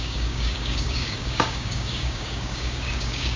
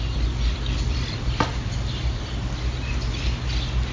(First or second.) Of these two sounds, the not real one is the first